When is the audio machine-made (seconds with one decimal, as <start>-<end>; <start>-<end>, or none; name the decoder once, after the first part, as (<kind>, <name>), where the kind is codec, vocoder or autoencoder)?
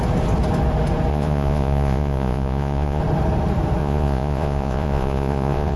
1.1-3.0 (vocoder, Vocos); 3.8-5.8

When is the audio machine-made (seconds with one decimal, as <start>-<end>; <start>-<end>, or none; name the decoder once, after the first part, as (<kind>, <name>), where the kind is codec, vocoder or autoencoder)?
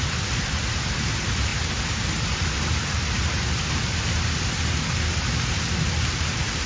none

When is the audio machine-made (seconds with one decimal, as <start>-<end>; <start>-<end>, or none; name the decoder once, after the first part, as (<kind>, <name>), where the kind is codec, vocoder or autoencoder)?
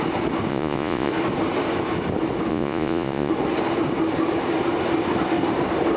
0.5-1.1 (vocoder, Vocos); 2.5-3.3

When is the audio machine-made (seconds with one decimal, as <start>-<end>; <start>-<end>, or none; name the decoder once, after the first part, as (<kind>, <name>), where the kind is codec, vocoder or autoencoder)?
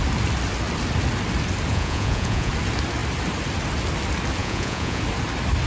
1.7-2.5 (vocoder, Vocos); 4.4-5.0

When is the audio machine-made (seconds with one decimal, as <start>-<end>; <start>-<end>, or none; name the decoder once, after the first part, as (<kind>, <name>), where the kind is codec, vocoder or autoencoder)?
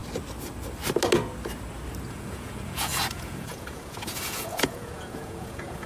2.1-5.9 (vocoder, Vocos)